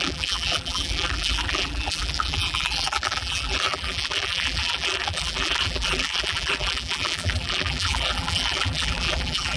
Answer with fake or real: fake